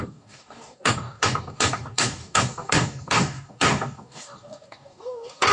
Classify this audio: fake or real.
fake